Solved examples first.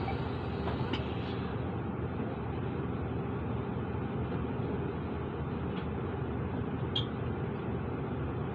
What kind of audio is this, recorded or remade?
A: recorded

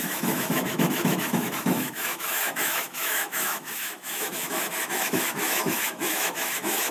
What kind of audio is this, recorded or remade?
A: remade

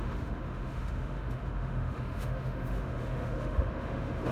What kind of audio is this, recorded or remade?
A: remade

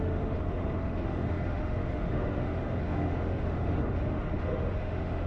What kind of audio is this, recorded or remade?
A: remade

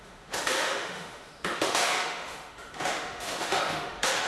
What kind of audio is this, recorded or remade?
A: remade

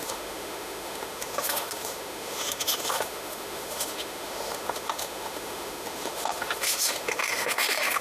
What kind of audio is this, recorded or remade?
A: remade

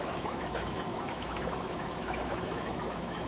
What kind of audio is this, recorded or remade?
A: remade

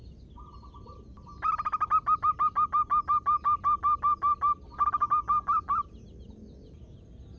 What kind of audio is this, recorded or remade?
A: recorded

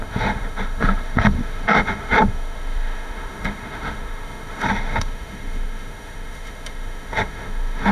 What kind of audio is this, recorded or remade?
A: remade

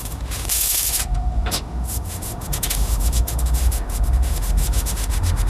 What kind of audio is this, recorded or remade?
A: remade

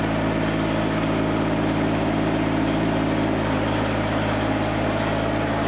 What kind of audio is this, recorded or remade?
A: recorded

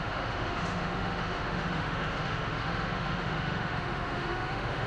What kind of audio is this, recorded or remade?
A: remade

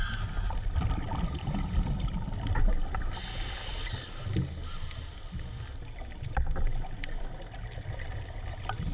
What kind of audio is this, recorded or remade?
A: recorded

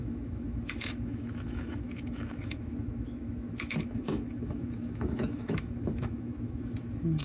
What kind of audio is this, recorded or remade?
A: remade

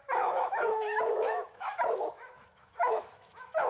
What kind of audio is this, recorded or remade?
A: remade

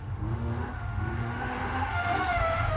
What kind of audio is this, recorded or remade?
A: remade